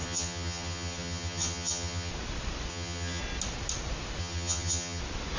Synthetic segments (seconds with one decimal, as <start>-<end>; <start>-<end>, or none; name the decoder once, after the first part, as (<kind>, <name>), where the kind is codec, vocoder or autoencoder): 0.0-2.1 (vocoder, HiFi-GAN); 2.7-3.2; 4.2-5.0